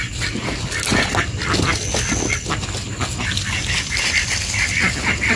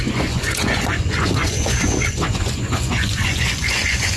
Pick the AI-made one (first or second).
second